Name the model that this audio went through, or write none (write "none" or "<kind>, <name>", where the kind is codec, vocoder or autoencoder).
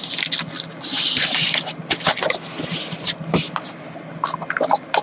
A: none